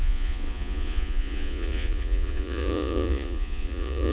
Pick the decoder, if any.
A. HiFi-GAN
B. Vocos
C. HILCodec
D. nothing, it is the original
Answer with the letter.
B